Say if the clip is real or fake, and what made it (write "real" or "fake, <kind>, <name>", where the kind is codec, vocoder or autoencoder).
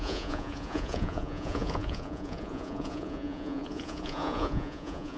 fake, vocoder, Vocos